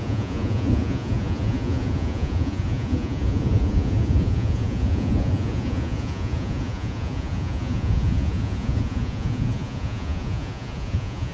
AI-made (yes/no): yes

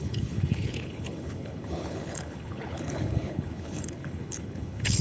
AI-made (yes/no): yes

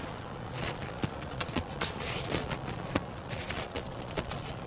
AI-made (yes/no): yes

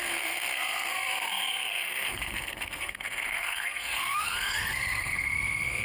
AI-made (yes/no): yes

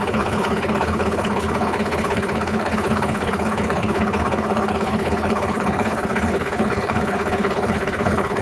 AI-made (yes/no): yes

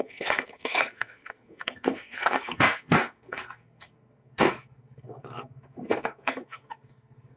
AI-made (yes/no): yes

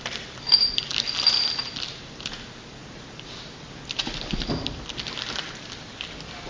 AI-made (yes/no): no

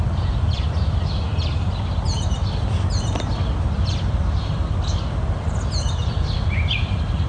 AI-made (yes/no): yes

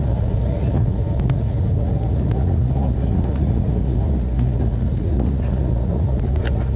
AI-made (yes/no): yes